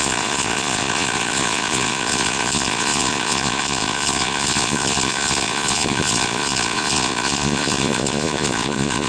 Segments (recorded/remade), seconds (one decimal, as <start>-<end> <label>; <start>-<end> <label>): 0.0-9.1 remade